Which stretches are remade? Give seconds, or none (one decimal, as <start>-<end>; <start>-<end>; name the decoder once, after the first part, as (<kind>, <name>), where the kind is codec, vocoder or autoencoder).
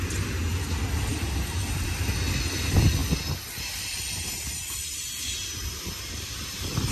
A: none